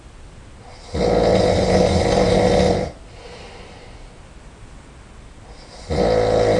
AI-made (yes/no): no